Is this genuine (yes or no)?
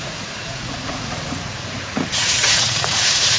no